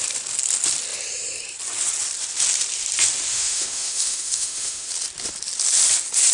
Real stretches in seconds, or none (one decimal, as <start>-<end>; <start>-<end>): 0.0-3.3; 4.9-6.3